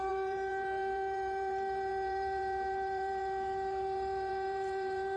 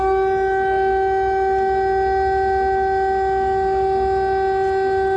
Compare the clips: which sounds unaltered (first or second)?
second